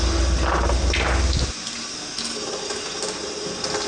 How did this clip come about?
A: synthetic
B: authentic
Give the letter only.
B